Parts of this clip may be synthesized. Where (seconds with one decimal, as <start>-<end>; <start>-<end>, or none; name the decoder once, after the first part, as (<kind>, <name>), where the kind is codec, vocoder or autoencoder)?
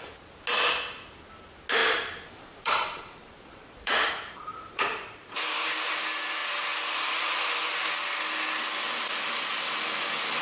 1.8-5.7 (vocoder, BigVGAN v2)